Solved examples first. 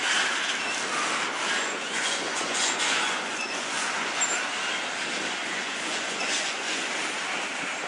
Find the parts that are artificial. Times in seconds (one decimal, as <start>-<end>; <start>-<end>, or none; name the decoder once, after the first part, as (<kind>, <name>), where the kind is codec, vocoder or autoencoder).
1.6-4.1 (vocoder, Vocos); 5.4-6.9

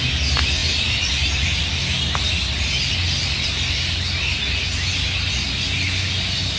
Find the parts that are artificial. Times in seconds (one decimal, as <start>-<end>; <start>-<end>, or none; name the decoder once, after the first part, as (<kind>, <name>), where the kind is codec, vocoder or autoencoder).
none

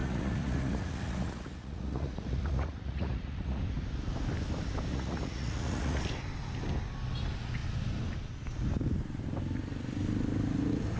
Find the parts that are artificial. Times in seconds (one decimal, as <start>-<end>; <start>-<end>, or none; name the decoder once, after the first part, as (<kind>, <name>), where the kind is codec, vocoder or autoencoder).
0.0-3.6 (vocoder, Vocos); 4.9-6.0